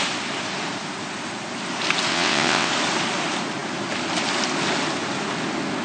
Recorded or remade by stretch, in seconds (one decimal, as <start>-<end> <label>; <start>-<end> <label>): 0.0-2.1 recorded; 2.1-2.7 remade; 2.7-5.8 recorded